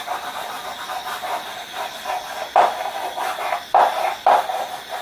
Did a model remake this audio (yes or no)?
no